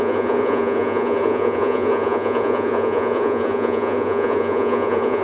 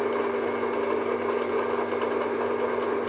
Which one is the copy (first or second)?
first